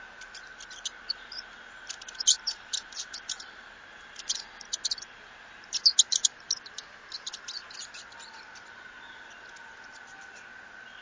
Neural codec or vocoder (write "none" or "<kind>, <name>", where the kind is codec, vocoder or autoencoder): none